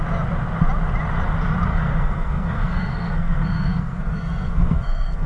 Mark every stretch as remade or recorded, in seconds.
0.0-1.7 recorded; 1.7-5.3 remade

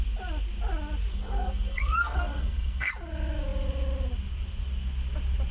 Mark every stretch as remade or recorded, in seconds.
0.0-1.1 recorded; 1.1-2.9 remade; 2.9-5.5 recorded

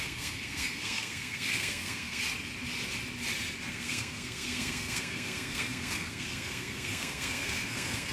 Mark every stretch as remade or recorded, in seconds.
0.0-2.2 remade; 2.2-3.7 recorded; 3.7-8.1 remade

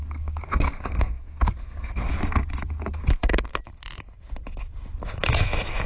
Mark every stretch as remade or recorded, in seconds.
0.0-2.1 remade; 2.1-2.9 recorded; 2.9-3.5 remade; 3.5-5.9 recorded

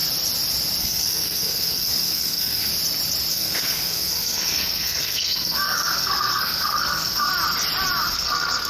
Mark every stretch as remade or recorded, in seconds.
0.0-0.8 recorded; 0.8-2.7 remade; 2.7-3.3 recorded; 3.3-7.3 remade; 7.3-8.1 recorded; 8.1-8.7 remade